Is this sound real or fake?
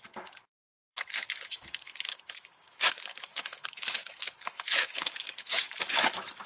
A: fake